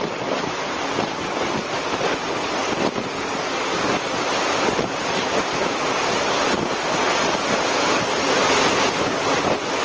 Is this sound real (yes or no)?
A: yes